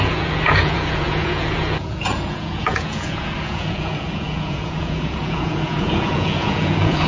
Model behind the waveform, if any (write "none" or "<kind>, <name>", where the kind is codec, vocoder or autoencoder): vocoder, Vocos